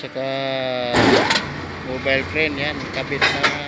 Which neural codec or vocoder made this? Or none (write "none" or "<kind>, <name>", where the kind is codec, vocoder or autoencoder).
none